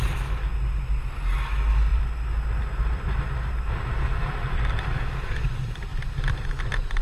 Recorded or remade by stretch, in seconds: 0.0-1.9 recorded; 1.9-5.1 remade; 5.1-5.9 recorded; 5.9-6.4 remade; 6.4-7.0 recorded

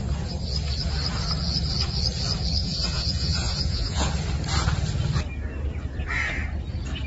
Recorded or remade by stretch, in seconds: 0.0-2.6 recorded; 2.6-4.1 remade; 4.1-7.1 recorded